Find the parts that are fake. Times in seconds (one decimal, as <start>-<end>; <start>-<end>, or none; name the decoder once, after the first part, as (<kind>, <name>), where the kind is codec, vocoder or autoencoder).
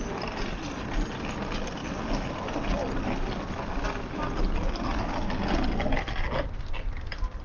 none